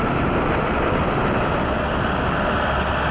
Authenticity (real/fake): real